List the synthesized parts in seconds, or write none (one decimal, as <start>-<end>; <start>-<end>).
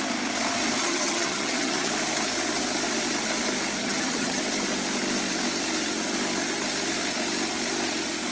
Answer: 0.8-1.9; 3.8-4.4